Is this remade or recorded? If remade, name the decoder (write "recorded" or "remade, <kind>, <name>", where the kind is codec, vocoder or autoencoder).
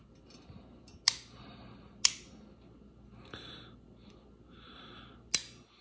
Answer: recorded